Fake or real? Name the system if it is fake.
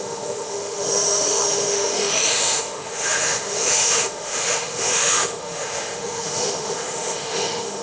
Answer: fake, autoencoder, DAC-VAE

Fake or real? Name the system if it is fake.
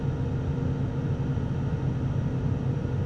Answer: real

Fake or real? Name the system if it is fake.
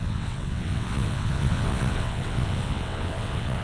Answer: fake, vocoder, WaveNeXt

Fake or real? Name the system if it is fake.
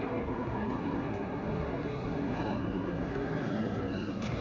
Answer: fake, codec, SNAC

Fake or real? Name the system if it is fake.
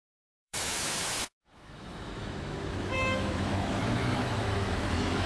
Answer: fake, autoencoder, DAC-VAE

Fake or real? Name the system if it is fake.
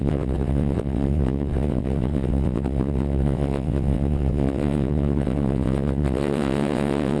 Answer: fake, vocoder, WaveNeXt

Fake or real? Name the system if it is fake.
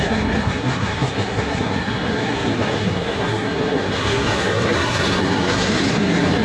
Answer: fake, codec, SNAC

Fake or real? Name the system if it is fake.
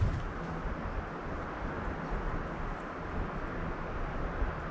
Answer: real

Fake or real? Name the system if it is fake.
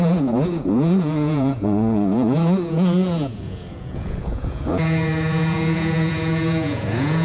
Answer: fake, vocoder, Vocos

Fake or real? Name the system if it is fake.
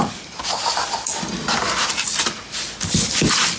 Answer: real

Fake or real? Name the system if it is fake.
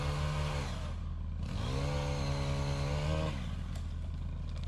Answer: real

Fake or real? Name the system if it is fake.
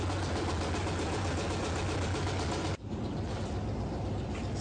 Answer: real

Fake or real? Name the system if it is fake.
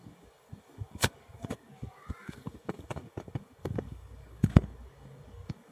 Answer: fake, codec, DAC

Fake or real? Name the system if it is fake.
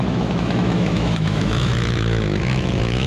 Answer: fake, autoencoder, DAC-VAE